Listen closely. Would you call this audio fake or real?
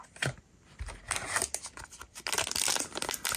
real